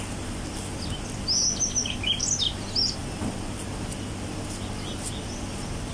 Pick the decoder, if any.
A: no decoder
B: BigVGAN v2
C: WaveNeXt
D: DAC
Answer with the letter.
A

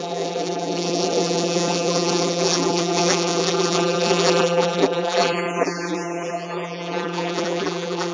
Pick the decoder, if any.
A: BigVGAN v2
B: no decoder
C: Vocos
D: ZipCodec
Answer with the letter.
A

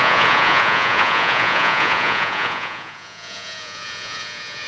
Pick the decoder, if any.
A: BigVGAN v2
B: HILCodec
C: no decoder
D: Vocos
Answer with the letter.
D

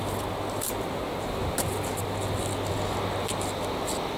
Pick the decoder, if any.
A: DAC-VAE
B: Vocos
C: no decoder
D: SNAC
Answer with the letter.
C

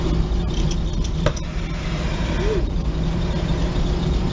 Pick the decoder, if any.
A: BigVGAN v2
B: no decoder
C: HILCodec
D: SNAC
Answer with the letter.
B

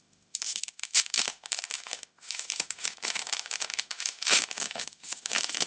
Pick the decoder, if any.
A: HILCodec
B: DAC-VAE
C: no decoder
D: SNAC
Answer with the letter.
B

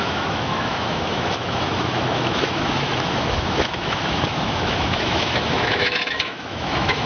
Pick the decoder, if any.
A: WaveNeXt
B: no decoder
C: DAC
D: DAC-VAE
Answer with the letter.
D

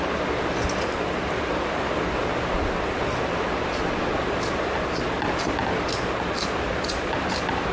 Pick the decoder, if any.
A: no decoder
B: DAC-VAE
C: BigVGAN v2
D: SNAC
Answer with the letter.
A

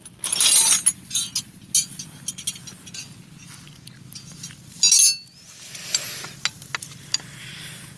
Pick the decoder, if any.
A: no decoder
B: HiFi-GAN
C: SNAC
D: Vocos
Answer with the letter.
A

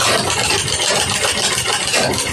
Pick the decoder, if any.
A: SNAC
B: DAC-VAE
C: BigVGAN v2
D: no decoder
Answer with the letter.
D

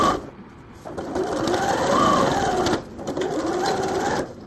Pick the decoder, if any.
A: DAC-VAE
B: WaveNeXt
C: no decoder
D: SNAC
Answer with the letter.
C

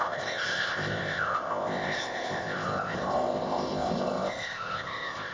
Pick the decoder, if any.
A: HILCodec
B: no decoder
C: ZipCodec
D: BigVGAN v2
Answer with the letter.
C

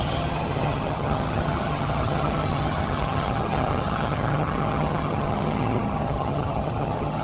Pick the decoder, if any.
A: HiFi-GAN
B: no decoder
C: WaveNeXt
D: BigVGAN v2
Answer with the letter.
A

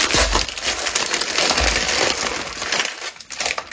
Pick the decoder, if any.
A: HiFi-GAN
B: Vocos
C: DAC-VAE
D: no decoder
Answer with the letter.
D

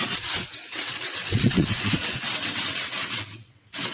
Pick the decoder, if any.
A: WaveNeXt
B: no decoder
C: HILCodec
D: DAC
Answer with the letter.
A